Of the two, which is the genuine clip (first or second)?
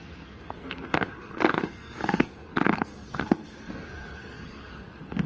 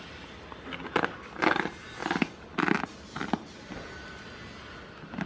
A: second